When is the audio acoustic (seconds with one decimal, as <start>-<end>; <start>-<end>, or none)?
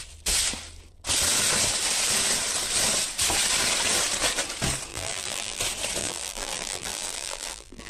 0.0-4.9; 5.6-6.0